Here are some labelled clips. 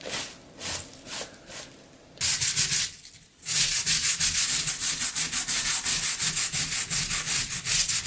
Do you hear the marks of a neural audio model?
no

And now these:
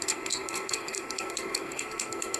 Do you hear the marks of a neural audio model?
yes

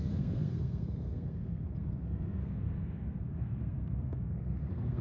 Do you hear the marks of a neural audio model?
yes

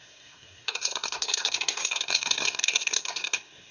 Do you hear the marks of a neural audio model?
yes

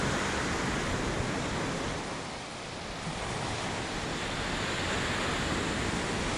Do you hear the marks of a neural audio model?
no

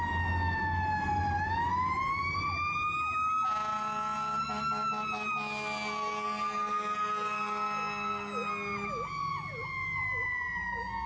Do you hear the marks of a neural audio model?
no